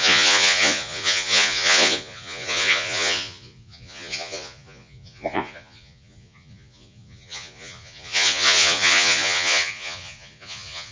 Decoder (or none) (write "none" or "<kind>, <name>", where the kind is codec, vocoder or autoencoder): vocoder, Vocos